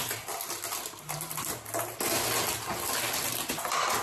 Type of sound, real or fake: real